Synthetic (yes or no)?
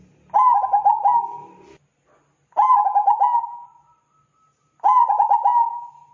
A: no